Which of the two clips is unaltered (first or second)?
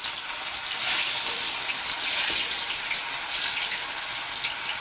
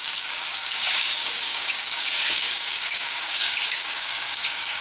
first